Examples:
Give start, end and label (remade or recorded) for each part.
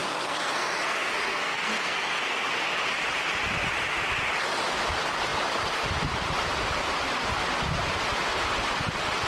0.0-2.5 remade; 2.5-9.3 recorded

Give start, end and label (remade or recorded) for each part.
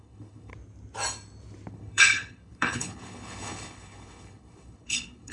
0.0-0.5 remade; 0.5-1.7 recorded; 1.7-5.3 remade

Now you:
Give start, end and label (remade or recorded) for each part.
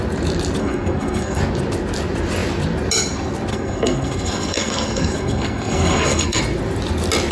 0.0-0.6 recorded; 0.6-1.4 remade; 1.4-3.5 recorded; 3.5-6.4 remade; 6.4-7.3 recorded